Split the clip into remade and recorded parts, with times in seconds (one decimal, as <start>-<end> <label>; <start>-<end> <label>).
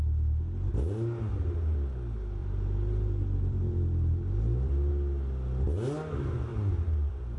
0.0-2.4 recorded; 2.4-4.9 remade; 4.9-6.5 recorded; 6.5-7.4 remade